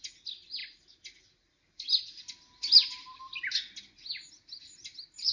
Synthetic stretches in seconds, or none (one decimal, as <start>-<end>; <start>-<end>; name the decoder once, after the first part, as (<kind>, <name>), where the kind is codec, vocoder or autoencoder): none